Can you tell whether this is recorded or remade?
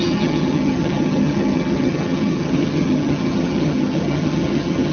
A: remade